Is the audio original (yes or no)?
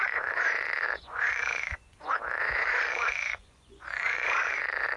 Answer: no